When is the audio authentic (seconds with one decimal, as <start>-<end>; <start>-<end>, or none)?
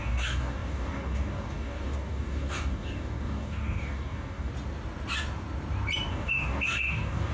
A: 4.5-6.1